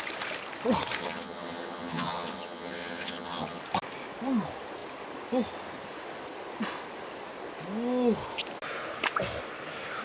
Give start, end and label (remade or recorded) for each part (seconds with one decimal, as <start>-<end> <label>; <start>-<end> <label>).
0.0-1.0 recorded; 1.0-3.6 remade; 3.6-10.0 recorded